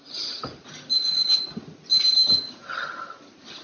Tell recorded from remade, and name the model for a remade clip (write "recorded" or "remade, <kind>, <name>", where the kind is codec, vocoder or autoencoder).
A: recorded